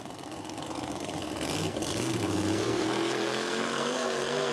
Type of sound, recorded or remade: remade